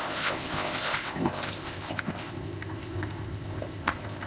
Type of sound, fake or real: fake